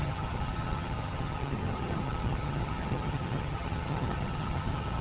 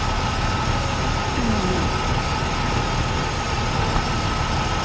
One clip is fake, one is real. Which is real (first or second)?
second